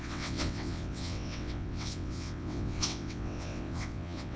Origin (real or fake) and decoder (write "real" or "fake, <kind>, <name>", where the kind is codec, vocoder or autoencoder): fake, vocoder, WaveNeXt